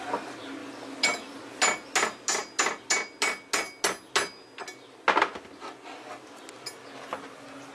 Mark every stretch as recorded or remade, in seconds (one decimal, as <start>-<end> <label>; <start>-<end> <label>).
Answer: 0.0-7.7 recorded